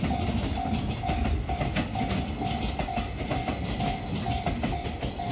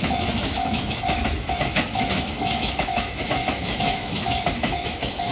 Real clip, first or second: first